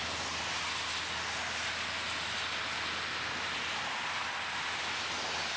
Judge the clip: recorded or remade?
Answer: recorded